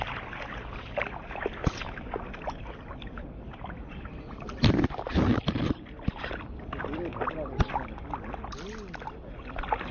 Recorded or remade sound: recorded